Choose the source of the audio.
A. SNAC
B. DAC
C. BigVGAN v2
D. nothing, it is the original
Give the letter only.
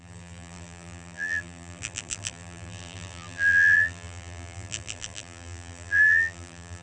C